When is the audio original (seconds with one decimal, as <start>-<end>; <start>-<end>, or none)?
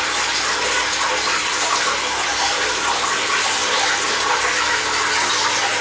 0.0-5.8